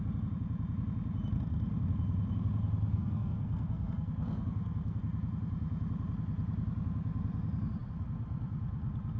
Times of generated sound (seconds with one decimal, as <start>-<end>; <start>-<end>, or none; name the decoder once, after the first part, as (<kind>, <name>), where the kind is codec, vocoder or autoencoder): 2.9-5.0 (codec, SNAC)